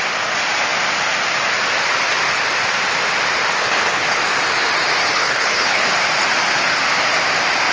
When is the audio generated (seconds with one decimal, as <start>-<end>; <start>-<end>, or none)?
3.6-4.2; 5.0-5.9